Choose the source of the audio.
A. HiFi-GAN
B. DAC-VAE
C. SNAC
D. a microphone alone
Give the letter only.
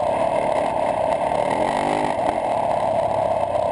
D